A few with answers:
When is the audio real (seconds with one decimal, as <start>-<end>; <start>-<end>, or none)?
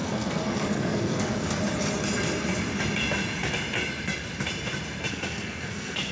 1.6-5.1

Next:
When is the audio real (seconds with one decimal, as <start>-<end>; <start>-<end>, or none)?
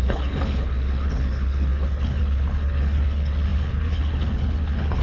none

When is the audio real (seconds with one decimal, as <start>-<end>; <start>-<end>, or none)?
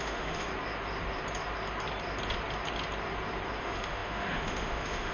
0.5-3.6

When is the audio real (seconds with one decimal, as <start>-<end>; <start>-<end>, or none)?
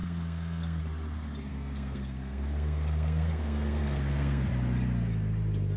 0.8-1.5; 4.5-5.8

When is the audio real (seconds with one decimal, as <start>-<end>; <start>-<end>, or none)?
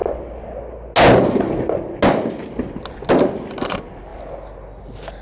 0.0-5.2